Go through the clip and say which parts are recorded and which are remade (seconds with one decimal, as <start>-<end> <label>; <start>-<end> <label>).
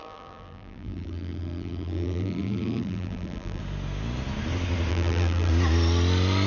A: 0.0-3.6 remade; 3.6-4.9 recorded; 4.9-5.5 remade; 5.5-6.5 recorded